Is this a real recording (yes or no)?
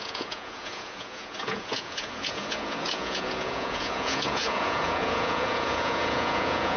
no